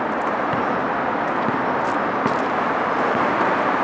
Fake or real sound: real